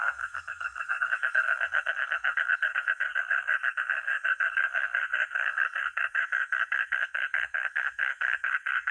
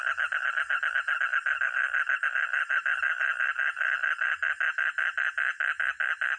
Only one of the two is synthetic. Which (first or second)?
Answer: first